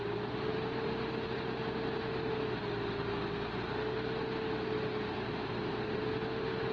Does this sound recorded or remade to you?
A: recorded